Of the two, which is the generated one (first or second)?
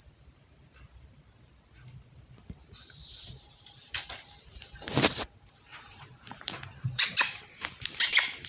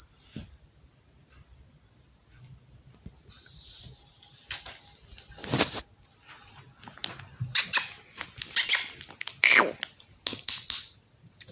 first